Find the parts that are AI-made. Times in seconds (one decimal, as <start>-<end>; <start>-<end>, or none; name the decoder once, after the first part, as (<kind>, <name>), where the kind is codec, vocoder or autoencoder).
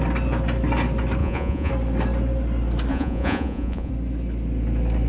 1.2-1.7 (vocoder, Vocos); 2.9-3.9